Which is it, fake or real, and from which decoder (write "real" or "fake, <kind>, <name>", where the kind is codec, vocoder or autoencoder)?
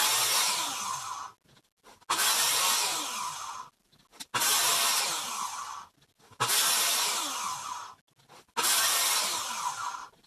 real